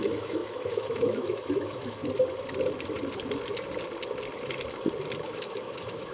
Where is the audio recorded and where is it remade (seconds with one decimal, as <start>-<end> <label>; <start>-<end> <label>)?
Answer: 0.0-2.0 remade; 2.0-5.2 recorded; 5.2-6.1 remade